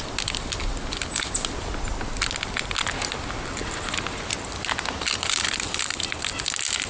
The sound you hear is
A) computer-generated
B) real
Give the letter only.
B